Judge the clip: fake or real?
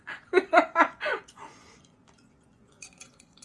fake